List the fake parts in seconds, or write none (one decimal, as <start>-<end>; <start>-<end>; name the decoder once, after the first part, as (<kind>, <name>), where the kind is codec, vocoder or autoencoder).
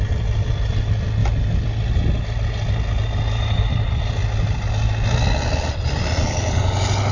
none